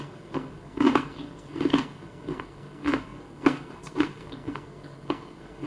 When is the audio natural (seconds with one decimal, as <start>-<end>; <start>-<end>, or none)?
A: none